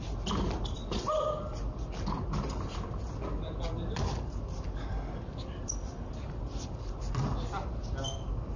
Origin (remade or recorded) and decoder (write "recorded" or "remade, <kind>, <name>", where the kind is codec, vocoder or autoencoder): recorded